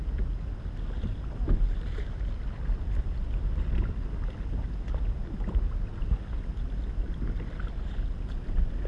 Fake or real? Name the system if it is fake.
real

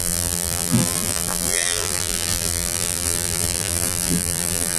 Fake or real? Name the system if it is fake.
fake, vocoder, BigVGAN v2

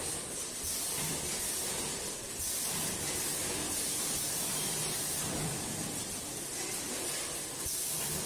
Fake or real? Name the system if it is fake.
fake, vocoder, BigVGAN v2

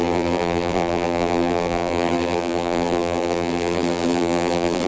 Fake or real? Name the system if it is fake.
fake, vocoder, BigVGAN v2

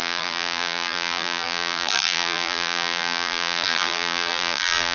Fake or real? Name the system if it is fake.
fake, vocoder, BigVGAN v2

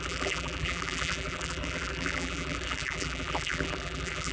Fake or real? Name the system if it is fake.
fake, vocoder, BigVGAN v2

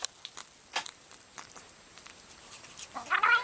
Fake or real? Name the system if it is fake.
real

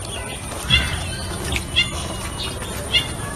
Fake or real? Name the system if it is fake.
real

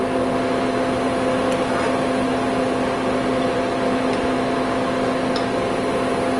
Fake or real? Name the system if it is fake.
real